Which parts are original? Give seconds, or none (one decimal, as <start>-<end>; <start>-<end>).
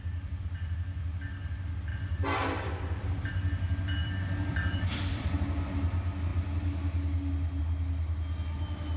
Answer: 0.0-1.9; 3.3-4.0; 5.4-9.0